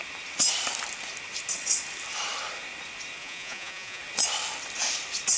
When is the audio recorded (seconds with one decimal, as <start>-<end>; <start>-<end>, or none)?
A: 0.0-3.2; 4.0-5.4